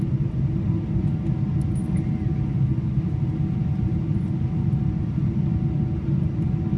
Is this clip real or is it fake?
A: real